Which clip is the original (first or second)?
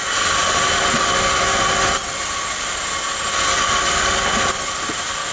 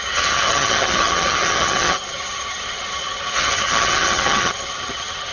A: first